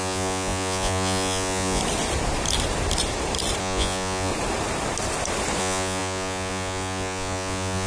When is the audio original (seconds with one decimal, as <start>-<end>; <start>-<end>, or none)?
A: 1.8-3.6; 4.3-5.6